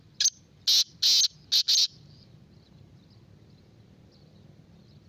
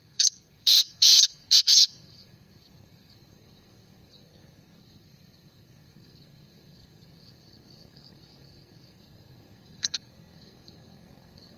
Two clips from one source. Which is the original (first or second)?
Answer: first